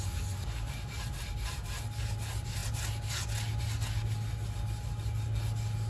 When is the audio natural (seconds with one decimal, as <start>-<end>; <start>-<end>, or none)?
0.0-5.9